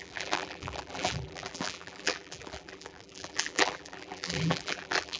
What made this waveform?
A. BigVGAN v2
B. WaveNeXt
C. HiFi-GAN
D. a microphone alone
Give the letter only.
A